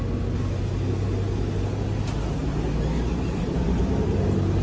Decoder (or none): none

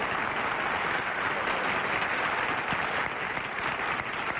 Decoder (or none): none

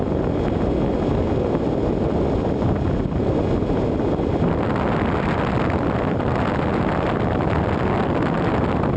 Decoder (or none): none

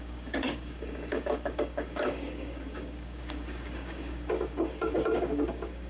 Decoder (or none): codec, DAC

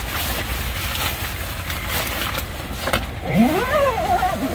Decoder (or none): none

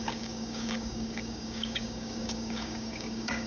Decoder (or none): codec, DAC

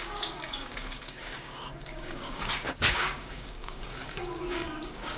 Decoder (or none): codec, DAC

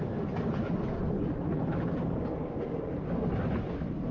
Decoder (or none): none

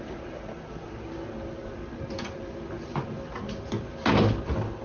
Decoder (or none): none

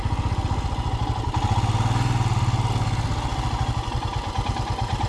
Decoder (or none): none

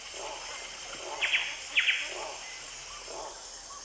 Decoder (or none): none